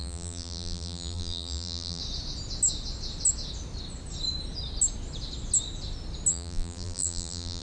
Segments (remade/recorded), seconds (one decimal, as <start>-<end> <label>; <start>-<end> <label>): 0.0-2.0 remade; 2.0-6.3 recorded; 6.3-7.6 remade